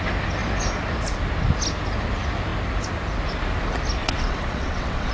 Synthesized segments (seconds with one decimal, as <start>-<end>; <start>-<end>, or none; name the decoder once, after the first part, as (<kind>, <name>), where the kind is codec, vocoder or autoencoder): 4.0-5.1 (vocoder, WaveNeXt)